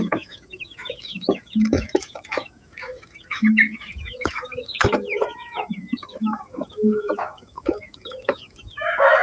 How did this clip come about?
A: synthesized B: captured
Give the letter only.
A